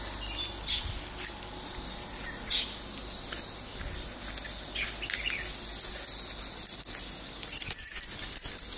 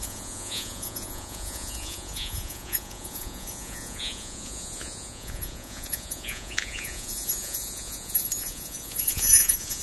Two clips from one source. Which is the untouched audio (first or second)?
first